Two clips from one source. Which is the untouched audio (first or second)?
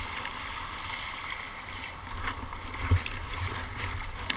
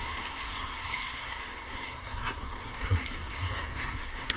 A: first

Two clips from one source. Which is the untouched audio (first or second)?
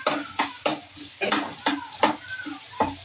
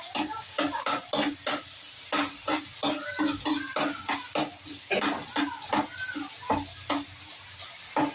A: second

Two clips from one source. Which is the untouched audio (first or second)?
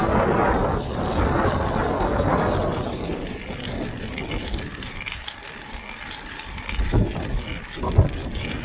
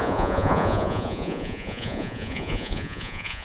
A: first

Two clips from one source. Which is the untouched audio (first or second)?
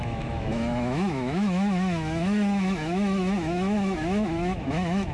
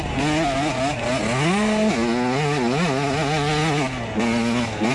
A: second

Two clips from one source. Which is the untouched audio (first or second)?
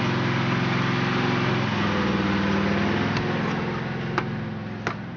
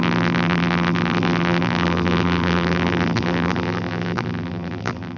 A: first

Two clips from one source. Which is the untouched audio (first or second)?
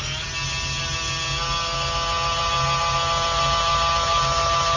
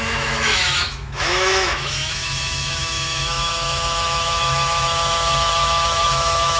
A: first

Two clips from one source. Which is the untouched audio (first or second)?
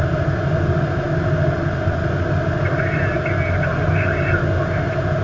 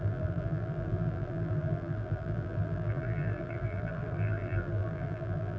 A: first